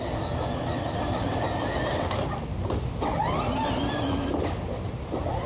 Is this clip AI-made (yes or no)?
no